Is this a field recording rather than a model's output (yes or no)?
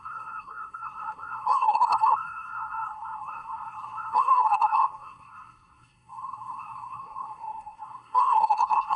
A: no